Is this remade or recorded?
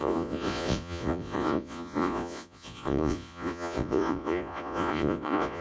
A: remade